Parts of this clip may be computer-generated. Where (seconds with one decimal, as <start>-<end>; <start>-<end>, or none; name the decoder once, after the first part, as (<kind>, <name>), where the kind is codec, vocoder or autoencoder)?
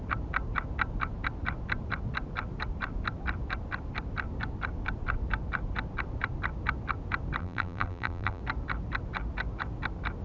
7.4-8.4 (vocoder, BigVGAN v2)